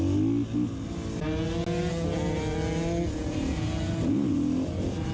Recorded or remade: recorded